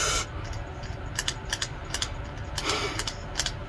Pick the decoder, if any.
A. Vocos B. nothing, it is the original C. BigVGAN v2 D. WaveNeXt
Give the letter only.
B